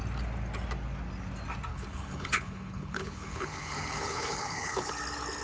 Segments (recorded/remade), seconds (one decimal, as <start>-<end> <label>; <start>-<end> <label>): 0.0-1.7 recorded; 1.7-4.9 remade; 4.9-5.4 recorded